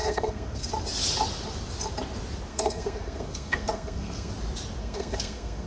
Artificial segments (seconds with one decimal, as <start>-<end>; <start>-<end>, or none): 0.0-0.7; 2.5-4.3; 4.8-5.7